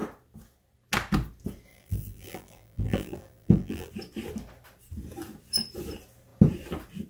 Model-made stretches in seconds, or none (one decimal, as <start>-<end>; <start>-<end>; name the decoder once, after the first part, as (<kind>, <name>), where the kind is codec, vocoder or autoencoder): 1.7-3.9 (vocoder, BigVGAN v2)